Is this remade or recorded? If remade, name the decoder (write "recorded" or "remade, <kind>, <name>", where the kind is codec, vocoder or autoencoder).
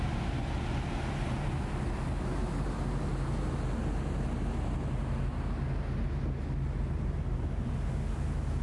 recorded